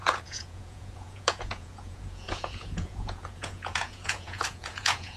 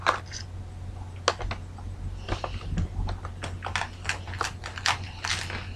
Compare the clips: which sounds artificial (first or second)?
first